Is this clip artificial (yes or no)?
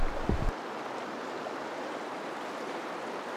no